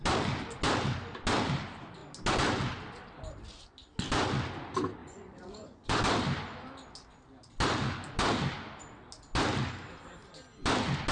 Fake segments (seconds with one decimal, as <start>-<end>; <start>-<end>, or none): 5.0-6.0